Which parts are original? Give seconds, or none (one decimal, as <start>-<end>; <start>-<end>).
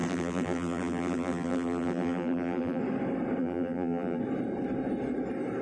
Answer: 2.8-3.4; 4.2-5.6